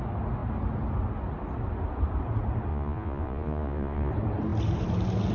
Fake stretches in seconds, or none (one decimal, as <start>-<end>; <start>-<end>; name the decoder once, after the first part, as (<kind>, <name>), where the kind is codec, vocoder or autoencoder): 2.7-4.1 (vocoder, Vocos)